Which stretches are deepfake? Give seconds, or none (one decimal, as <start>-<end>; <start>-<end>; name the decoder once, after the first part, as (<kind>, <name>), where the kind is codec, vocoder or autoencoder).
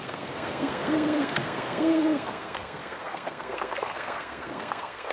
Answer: 0.0-5.1 (codec, SNAC)